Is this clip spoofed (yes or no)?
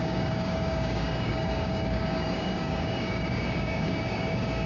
yes